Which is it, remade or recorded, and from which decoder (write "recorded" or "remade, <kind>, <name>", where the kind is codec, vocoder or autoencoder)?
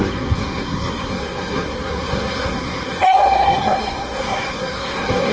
remade, codec, SNAC